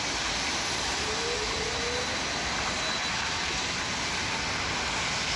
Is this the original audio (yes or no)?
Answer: yes